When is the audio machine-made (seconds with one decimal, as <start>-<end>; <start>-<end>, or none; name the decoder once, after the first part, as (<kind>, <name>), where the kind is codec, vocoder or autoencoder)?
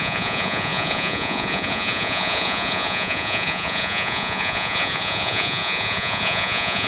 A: 0.0-6.9 (vocoder, Vocos)